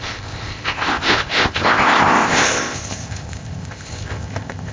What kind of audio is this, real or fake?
fake